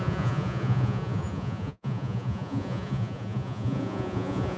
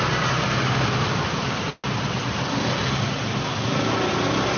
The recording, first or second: second